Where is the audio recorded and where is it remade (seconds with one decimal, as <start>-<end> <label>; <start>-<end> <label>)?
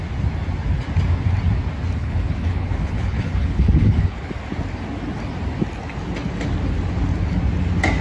0.0-2.0 recorded; 2.0-4.3 remade; 4.3-8.0 recorded